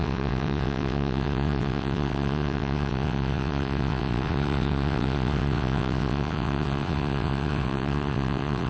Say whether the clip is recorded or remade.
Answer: remade